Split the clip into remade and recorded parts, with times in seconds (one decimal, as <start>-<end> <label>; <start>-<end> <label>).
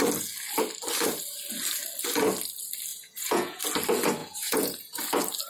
0.0-2.9 recorded; 2.9-3.6 remade; 3.6-4.2 recorded; 4.2-5.0 remade; 5.0-5.5 recorded